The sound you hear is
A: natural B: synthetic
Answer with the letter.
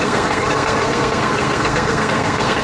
B